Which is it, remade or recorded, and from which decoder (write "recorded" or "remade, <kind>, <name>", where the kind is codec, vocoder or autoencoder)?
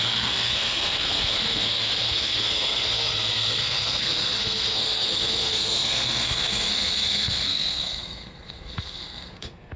remade, codec, SNAC